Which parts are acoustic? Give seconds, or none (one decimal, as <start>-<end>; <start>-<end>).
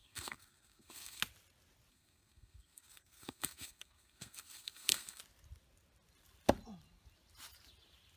1.2-1.9; 5.2-8.2